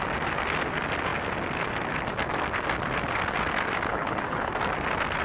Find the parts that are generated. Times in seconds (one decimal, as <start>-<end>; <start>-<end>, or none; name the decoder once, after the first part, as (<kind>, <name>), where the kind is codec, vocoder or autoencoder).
3.9-4.5 (codec, HILCodec)